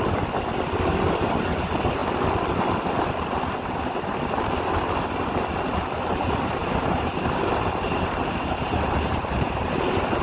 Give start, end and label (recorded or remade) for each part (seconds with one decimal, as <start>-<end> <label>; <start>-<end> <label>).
0.0-6.6 recorded; 6.6-10.2 remade